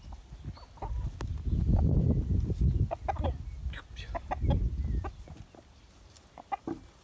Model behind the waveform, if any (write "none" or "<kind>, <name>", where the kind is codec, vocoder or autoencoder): none